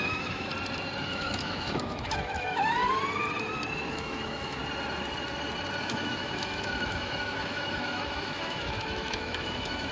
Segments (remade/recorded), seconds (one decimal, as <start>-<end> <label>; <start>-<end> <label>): 0.0-0.5 remade; 0.5-1.1 recorded; 1.1-2.8 remade; 2.8-3.9 recorded; 3.9-4.6 remade; 4.6-5.8 recorded; 5.8-9.9 remade